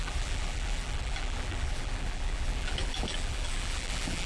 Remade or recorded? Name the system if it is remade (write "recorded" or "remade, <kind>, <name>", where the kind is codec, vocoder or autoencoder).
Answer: remade, vocoder, BigVGAN v2